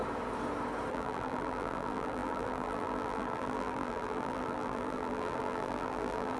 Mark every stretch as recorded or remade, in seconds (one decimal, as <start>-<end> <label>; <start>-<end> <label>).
0.0-0.9 recorded; 0.9-6.4 remade